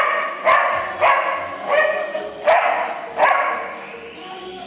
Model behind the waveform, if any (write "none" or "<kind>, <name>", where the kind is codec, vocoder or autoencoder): none